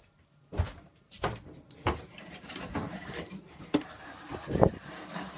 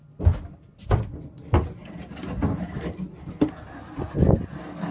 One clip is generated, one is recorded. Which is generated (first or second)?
first